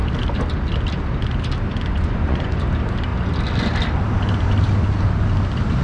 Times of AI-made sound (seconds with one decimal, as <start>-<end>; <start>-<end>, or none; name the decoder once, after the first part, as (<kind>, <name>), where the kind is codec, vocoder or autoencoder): 1.9-2.6 (vocoder, Vocos)

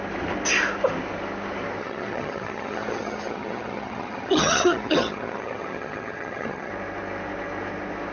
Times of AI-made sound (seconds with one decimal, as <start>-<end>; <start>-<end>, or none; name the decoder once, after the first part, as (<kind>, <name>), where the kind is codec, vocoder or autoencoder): 1.8-6.7 (vocoder, HiFi-GAN)

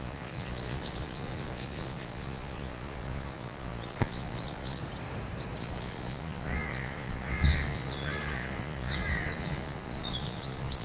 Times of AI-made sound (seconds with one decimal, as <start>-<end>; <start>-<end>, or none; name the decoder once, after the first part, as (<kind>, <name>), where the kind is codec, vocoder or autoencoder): 0.0-4.8 (vocoder, Vocos); 5.6-10.8

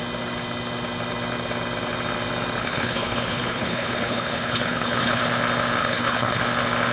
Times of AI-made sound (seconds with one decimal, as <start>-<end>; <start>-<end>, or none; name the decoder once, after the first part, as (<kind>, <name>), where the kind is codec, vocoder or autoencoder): 2.6-5.2 (codec, HILCodec); 5.8-6.4

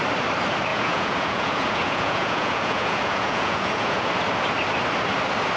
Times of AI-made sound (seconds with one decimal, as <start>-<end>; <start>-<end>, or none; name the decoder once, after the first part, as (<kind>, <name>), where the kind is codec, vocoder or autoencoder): 0.7-4.1 (vocoder, Vocos)